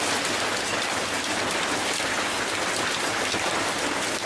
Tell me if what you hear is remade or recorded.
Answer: recorded